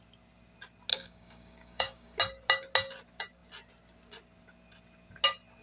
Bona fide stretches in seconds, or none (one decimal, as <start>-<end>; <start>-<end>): 0.0-0.9; 2.2-5.6